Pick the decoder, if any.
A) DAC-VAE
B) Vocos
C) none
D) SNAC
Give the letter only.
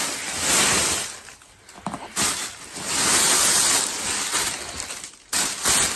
C